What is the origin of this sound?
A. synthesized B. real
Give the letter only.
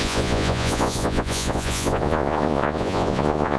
A